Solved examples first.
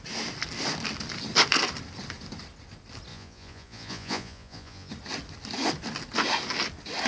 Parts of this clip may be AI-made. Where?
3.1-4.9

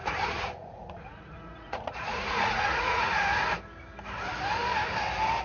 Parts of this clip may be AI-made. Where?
0.0-3.2

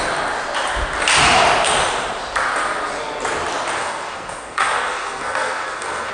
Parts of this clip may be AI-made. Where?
3.8-6.1

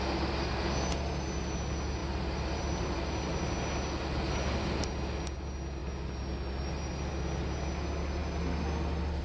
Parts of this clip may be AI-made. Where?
none